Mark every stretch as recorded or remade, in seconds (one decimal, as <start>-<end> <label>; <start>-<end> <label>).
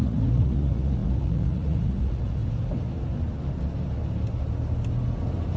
0.0-2.4 remade; 2.4-5.6 recorded